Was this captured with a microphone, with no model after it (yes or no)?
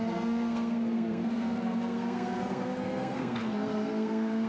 no